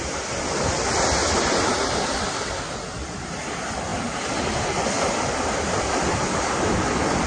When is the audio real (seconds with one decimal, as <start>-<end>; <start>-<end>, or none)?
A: 0.0-1.2; 2.6-7.3